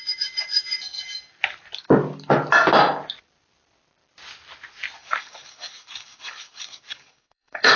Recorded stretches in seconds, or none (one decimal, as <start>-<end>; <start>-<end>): 0.0-5.0